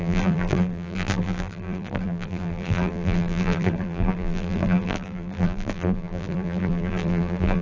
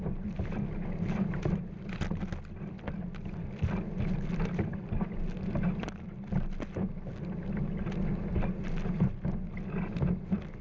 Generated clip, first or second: first